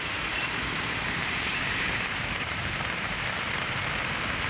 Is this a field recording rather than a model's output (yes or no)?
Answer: no